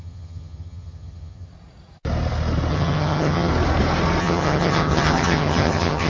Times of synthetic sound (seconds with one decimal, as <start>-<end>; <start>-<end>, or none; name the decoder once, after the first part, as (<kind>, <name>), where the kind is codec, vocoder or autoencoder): 0.0-1.5 (vocoder, HiFi-GAN); 2.7-3.5; 4.2-6.1

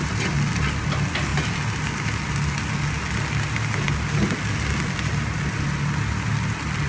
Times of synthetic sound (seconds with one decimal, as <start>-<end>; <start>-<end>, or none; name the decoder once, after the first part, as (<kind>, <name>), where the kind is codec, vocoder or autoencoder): none

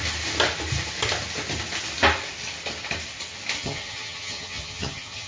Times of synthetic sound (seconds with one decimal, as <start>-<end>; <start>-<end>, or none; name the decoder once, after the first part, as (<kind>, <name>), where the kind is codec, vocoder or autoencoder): 3.6-5.3 (vocoder, HiFi-GAN)

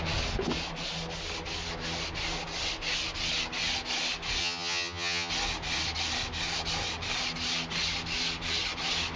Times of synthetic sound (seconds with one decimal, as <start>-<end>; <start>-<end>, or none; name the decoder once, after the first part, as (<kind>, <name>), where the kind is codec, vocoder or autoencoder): 4.4-5.3 (vocoder, HiFi-GAN)

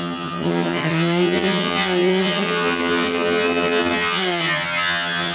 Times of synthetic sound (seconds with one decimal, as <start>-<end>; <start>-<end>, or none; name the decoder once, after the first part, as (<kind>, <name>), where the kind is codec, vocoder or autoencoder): 0.0-5.3 (vocoder, HiFi-GAN)

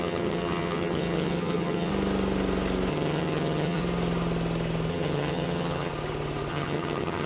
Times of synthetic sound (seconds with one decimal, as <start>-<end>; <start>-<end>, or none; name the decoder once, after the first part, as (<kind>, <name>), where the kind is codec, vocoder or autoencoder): 0.0-1.9 (vocoder, HiFi-GAN); 2.9-3.8; 4.9-5.9; 6.5-7.3